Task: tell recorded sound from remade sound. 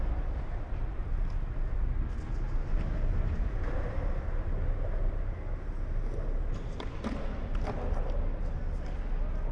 recorded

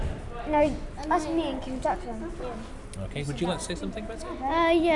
recorded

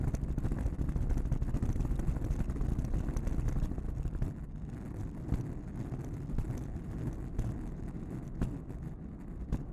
recorded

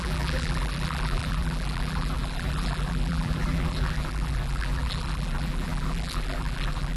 remade